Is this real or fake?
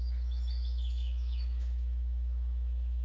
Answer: fake